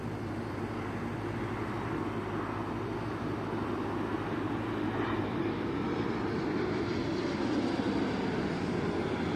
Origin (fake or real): real